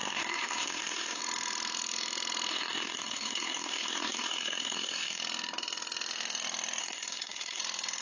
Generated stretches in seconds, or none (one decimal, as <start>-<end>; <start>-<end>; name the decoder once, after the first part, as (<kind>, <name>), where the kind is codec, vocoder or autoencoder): 0.0-1.2 (codec, SNAC); 2.5-5.2; 6.8-7.6